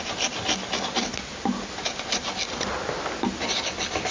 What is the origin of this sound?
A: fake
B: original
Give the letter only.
B